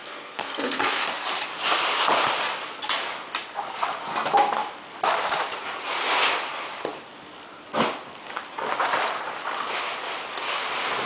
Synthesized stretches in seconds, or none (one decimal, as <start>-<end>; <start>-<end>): 0.0-1.1